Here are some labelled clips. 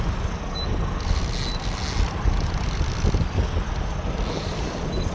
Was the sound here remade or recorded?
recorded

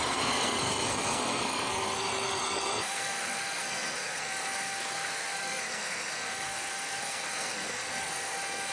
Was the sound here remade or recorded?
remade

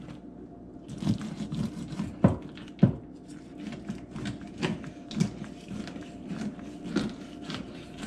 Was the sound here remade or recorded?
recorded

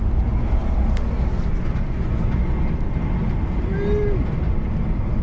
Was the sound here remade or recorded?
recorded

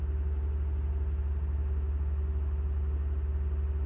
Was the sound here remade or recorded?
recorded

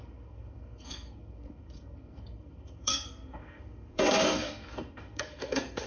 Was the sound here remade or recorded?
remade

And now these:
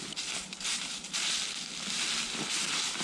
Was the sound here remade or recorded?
recorded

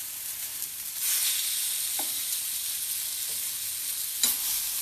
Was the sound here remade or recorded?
recorded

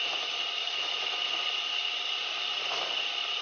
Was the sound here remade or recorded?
recorded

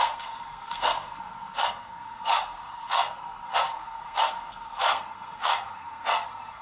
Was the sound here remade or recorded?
remade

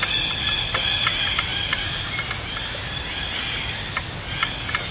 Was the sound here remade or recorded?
recorded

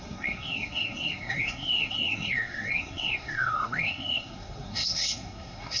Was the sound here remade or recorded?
remade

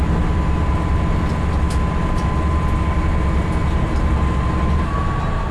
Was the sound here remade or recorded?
recorded